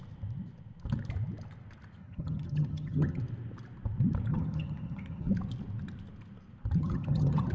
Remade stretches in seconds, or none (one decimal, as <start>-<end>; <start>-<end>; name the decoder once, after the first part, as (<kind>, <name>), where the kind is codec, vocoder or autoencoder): 2.0-3.2 (vocoder, HiFi-GAN); 4.3-5.3; 6.8-7.5